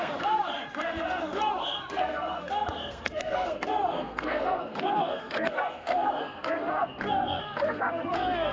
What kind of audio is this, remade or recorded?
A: remade